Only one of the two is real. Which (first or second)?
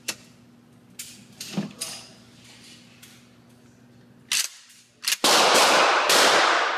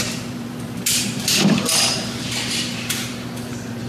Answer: first